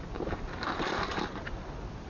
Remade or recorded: recorded